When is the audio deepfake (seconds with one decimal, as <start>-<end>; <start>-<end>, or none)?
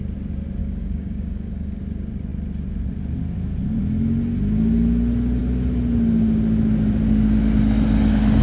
0.6-1.8